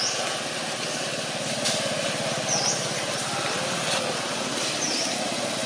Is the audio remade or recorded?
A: recorded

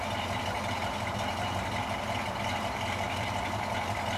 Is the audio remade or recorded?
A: remade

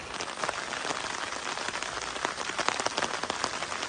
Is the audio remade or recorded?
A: recorded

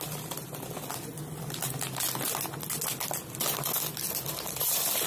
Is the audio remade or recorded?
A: recorded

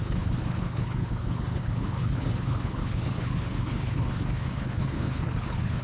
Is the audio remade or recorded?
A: remade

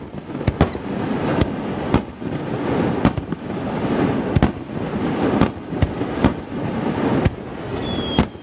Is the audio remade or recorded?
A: recorded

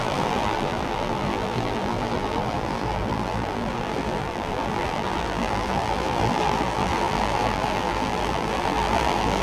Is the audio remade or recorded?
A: remade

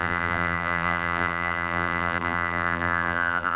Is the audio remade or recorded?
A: remade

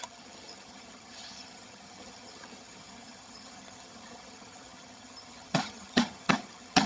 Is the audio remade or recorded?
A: remade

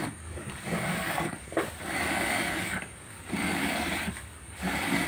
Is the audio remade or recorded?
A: remade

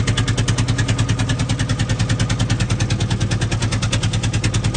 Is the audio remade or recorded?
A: recorded